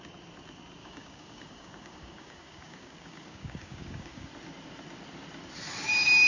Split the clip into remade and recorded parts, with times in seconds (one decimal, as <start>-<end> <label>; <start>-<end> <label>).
0.0-0.8 recorded; 0.8-4.3 remade; 4.3-6.3 recorded